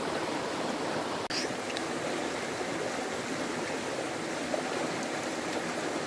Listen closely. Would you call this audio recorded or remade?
recorded